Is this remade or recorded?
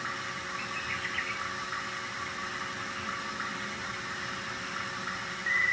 recorded